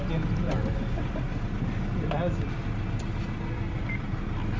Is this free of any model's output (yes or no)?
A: yes